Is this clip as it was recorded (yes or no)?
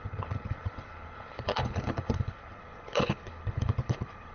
no